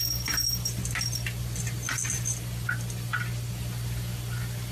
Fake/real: real